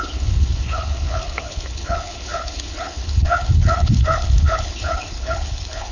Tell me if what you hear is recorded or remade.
remade